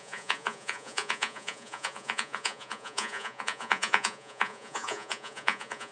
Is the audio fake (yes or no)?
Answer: yes